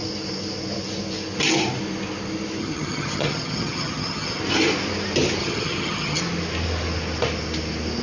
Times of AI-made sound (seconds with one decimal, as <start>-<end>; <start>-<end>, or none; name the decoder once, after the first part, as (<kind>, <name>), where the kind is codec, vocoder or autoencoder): 2.6-4.4 (vocoder, HiFi-GAN); 5.4-6.2